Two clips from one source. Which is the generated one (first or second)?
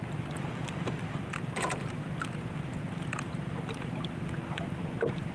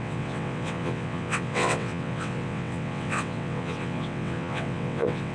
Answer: second